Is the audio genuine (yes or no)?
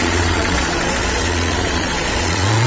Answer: no